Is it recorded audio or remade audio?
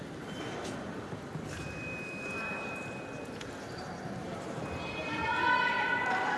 remade